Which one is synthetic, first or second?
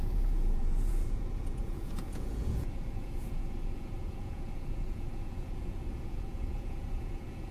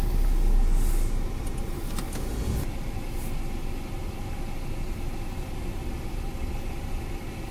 first